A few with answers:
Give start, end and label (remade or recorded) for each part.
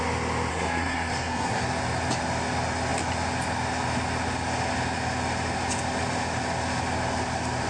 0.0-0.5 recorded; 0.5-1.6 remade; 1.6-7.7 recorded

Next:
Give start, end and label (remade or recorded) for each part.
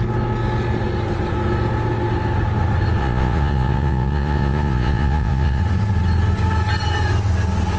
0.0-3.0 recorded; 3.0-5.6 remade; 5.6-7.8 recorded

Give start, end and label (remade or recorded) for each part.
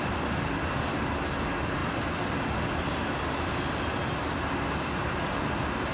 0.0-5.9 recorded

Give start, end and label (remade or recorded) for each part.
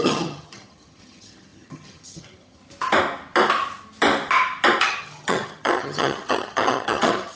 0.0-2.6 remade; 2.6-4.8 recorded; 4.8-7.4 remade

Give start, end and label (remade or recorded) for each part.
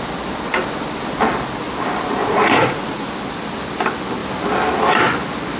0.0-2.2 recorded; 2.2-3.1 remade; 3.1-5.6 recorded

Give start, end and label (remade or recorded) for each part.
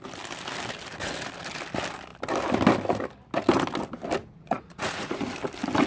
0.0-4.2 recorded; 4.2-5.3 remade; 5.3-5.9 recorded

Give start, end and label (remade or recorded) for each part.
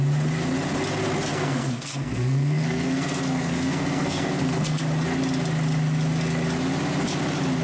0.0-1.3 recorded; 1.3-4.8 remade; 4.8-7.6 recorded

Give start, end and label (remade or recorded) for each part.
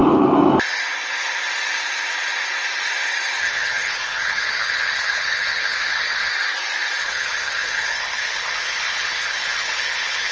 0.0-3.4 recorded; 3.4-6.3 remade; 6.3-7.0 recorded; 7.0-10.3 remade